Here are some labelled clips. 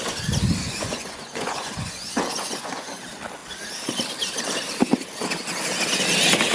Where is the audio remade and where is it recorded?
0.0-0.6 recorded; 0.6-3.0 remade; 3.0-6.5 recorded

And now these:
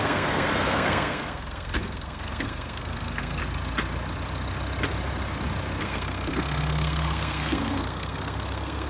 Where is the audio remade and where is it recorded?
0.0-3.4 remade; 3.4-5.8 recorded; 5.8-8.9 remade

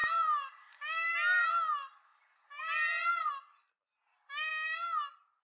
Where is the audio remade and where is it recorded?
0.0-0.7 remade; 0.7-2.1 recorded; 2.1-3.3 remade; 3.3-5.4 recorded

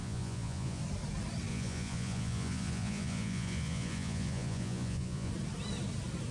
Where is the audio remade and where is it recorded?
0.0-0.8 remade; 0.8-1.5 recorded; 1.5-5.3 remade; 5.3-6.3 recorded

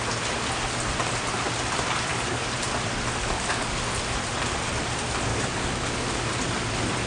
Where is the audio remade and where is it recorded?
0.0-2.1 recorded; 2.1-2.6 remade; 2.6-3.2 recorded; 3.2-3.8 remade; 3.8-5.3 recorded; 5.3-6.3 remade; 6.3-7.1 recorded

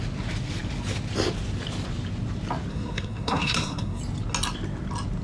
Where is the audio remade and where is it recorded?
0.0-2.7 recorded; 2.7-4.0 remade; 4.0-5.2 recorded